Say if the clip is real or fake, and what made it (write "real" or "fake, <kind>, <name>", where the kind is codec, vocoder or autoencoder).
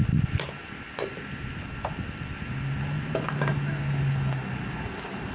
real